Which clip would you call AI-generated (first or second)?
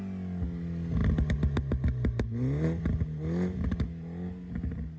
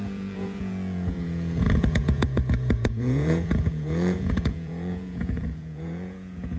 second